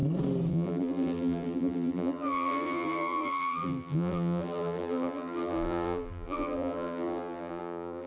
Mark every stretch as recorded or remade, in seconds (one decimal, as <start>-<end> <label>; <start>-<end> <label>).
0.0-0.5 recorded; 0.5-8.1 remade